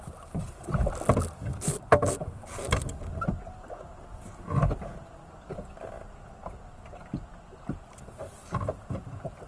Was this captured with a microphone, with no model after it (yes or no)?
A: yes